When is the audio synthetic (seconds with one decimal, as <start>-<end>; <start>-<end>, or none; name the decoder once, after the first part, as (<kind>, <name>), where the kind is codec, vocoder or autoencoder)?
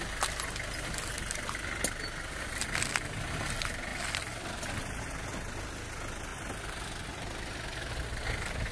none